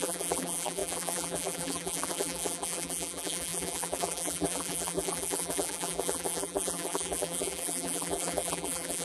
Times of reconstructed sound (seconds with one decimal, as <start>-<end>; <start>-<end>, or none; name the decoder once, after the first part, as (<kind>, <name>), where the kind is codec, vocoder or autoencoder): 0.0-9.0 (vocoder, BigVGAN v2)